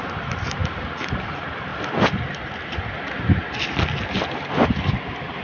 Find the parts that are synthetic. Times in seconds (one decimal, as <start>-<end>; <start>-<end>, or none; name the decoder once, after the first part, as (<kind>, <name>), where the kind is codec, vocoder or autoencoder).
none